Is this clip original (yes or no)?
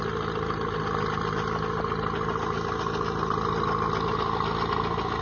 yes